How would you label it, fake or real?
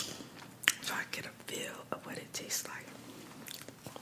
real